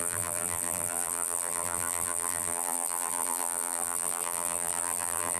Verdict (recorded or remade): remade